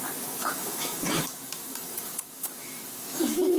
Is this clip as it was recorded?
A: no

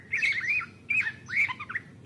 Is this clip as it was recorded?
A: yes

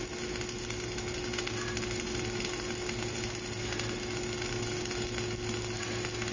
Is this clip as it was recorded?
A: yes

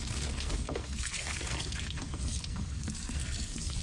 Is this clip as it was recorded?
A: no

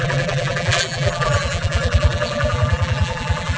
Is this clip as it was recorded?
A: no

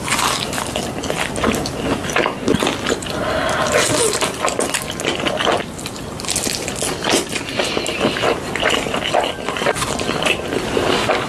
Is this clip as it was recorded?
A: yes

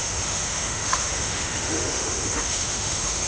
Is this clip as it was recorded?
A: no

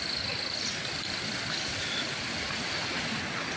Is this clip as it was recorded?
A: yes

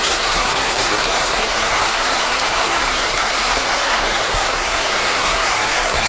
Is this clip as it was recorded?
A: no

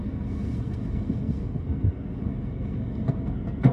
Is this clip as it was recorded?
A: no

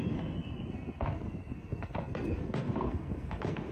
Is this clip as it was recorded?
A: no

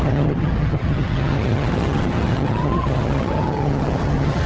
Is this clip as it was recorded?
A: no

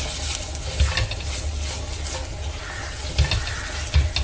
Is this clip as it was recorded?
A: yes